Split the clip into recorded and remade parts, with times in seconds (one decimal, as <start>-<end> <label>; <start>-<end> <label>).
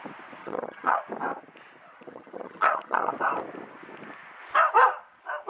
0.0-0.4 recorded; 0.4-1.0 remade; 1.0-1.9 recorded; 1.9-3.1 remade; 3.1-5.5 recorded